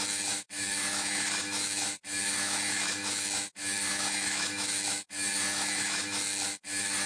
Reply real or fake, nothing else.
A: fake